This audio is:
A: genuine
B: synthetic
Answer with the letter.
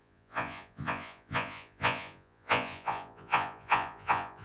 B